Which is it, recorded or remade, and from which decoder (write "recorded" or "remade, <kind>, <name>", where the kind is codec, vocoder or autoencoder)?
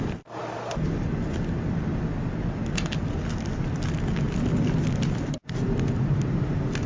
recorded